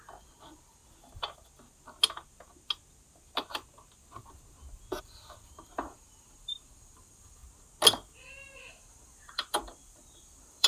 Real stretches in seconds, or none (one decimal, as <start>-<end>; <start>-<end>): 0.8-5.0; 7.4-8.7